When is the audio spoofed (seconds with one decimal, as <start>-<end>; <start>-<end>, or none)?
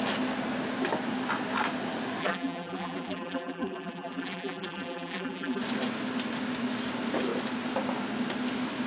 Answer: 2.2-5.6